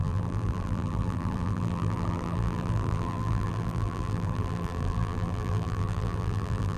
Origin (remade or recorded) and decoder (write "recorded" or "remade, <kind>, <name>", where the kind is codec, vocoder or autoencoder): remade, vocoder, BigVGAN v2